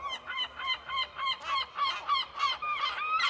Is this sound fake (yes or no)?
no